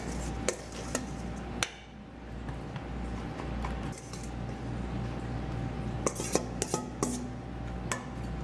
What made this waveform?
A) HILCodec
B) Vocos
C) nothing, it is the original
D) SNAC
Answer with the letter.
C